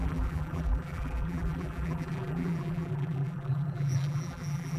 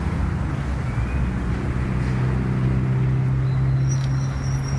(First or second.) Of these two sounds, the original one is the second